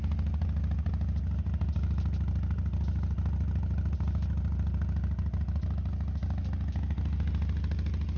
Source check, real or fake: real